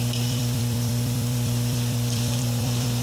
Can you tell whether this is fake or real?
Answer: fake